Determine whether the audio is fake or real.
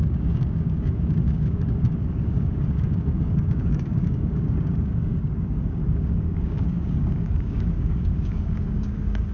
fake